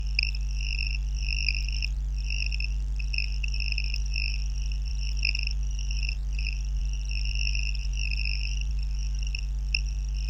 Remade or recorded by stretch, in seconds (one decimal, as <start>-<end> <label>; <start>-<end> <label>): 0.0-10.3 recorded